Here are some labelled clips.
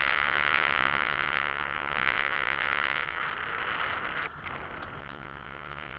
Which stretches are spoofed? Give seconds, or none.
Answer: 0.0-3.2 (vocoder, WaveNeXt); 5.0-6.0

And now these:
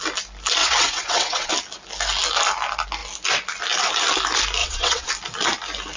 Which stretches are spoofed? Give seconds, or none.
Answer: 0.6-1.5 (vocoder, WaveNeXt); 4.6-5.1

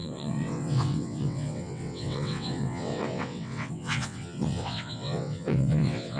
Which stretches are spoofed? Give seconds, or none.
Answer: 0.0-6.2 (vocoder, WaveNeXt)

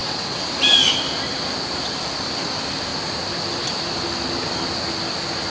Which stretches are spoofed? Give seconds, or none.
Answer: 0.0-0.6 (vocoder, WaveNeXt)

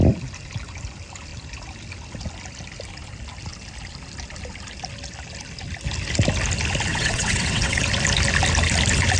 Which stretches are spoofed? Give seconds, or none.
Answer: 6.9-7.8 (vocoder, WaveNeXt)